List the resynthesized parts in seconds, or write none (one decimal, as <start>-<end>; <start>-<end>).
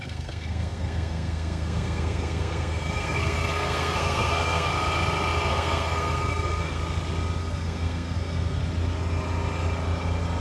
0.0-4.7; 5.5-6.8; 7.4-8.6